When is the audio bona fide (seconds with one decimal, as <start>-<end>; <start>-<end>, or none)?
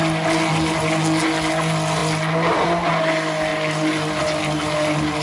0.0-5.2